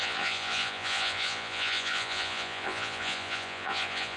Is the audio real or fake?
fake